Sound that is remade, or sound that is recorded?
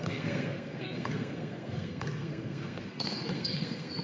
remade